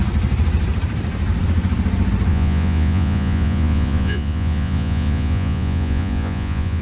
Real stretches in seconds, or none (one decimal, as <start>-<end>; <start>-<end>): 0.0-2.3